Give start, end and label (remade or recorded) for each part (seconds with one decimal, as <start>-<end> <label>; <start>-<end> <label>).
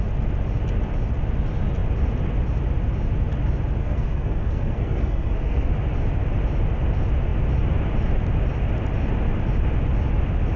0.0-3.8 recorded; 3.8-5.7 remade; 5.7-10.6 recorded